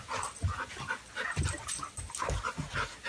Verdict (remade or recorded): recorded